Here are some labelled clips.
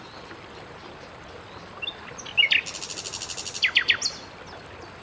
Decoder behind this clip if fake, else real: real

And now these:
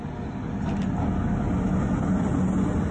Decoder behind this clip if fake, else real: real